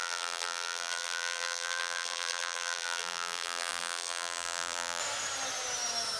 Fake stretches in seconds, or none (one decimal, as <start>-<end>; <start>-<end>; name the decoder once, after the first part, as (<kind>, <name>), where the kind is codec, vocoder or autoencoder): 0.0-5.0 (vocoder, BigVGAN v2)

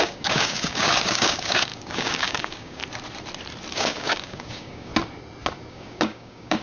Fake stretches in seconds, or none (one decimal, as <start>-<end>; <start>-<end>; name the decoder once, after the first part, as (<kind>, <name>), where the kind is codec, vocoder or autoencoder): 0.0-2.8 (codec, DAC); 3.7-4.9; 5.7-6.6

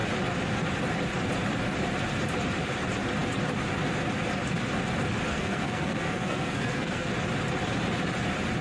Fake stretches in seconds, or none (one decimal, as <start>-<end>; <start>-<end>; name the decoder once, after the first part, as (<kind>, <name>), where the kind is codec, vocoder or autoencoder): 5.3-7.1 (codec, SNAC)

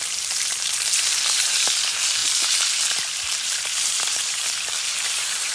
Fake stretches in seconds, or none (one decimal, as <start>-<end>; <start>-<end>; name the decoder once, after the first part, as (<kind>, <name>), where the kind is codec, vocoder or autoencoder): 0.0-5.5 (vocoder, BigVGAN v2)

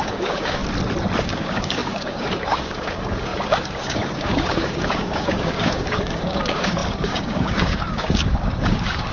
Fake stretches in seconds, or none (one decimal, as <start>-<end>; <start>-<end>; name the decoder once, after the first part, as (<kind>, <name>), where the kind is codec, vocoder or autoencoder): 0.0-0.6 (codec, DAC); 1.2-9.1

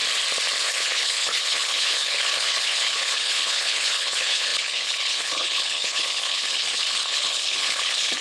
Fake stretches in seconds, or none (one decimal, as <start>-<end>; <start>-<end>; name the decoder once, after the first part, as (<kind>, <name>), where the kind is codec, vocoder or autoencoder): 0.6-8.2 (codec, HILCodec)

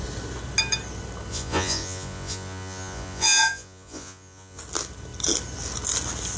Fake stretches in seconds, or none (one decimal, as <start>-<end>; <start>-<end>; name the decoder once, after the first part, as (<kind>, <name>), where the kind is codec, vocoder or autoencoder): 1.3-4.6 (vocoder, Vocos)